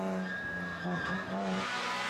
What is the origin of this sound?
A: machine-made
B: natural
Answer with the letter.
B